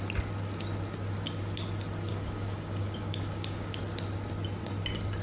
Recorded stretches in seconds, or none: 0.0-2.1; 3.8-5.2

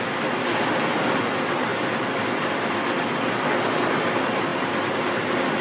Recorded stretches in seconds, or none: 0.0-1.7; 4.0-5.6

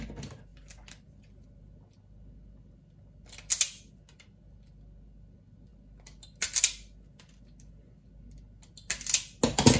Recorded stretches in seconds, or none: 0.0-9.8

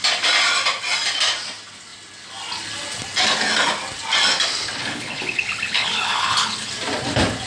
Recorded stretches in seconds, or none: 0.0-4.8; 6.7-7.5

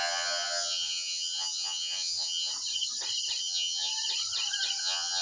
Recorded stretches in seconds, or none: 2.5-3.4; 3.9-4.8